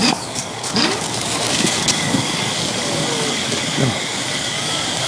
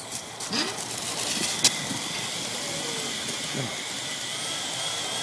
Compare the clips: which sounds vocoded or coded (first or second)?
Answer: first